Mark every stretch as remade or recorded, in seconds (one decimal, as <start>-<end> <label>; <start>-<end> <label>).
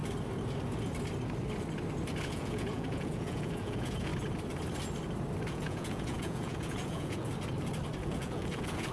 0.0-2.2 recorded; 2.2-4.1 remade; 4.1-5.5 recorded; 5.5-7.3 remade; 7.3-8.0 recorded; 8.0-8.9 remade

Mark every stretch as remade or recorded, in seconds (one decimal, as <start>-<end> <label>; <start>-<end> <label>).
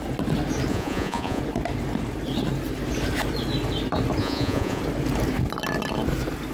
0.0-0.7 recorded; 0.7-1.4 remade; 1.4-4.2 recorded; 4.2-4.8 remade; 4.8-6.5 recorded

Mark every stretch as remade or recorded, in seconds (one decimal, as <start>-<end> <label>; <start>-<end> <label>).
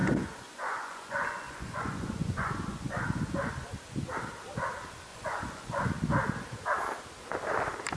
0.0-3.5 remade; 3.5-5.1 recorded; 5.1-5.9 remade; 5.9-8.0 recorded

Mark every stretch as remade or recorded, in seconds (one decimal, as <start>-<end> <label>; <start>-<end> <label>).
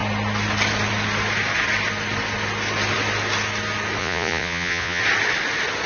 0.0-4.0 recorded; 4.0-5.0 remade; 5.0-5.9 recorded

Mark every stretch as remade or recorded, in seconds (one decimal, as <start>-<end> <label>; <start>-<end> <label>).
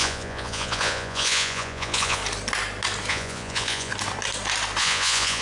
0.0-2.2 remade; 2.2-3.1 recorded; 3.1-3.9 remade; 3.9-4.8 recorded; 4.8-5.4 remade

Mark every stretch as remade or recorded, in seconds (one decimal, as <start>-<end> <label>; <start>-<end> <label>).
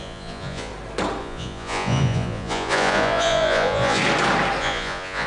0.0-0.7 remade; 0.7-1.2 recorded; 1.2-4.0 remade; 4.0-4.6 recorded; 4.6-5.3 remade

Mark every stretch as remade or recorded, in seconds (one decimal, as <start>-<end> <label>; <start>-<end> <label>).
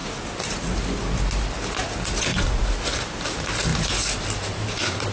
0.0-2.3 recorded; 2.3-3.0 remade; 3.0-5.1 recorded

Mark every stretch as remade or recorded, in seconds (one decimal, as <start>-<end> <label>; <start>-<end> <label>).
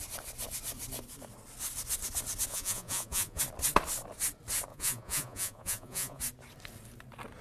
0.0-2.5 recorded; 2.5-3.4 remade; 3.4-4.7 recorded; 4.7-6.2 remade; 6.2-7.4 recorded